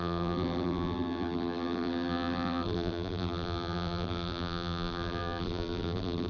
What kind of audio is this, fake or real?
fake